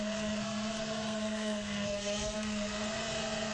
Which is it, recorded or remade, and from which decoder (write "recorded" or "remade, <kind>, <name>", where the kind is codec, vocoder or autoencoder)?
remade, codec, SNAC